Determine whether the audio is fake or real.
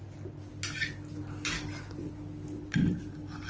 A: real